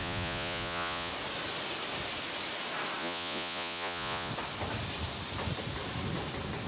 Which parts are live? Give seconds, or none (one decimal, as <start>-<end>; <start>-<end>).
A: 1.1-3.0; 4.3-6.7